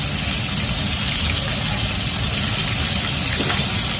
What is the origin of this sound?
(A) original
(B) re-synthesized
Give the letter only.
A